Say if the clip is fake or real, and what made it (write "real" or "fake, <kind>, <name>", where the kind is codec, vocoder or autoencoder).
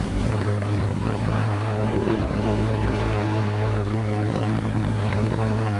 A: fake, codec, SNAC